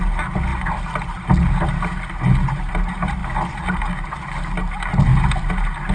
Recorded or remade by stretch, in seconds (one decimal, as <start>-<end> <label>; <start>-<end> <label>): 0.0-5.9 recorded